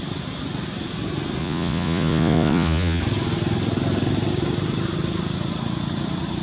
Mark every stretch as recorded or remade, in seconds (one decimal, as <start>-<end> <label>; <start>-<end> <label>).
0.0-1.4 recorded; 1.4-3.0 remade; 3.0-6.4 recorded